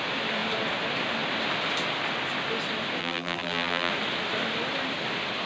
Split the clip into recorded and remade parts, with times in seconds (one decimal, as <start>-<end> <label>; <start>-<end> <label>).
0.0-3.0 recorded; 3.0-3.9 remade; 3.9-5.5 recorded